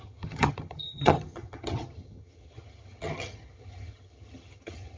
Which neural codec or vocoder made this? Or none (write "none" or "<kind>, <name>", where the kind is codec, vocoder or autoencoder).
vocoder, HiFi-GAN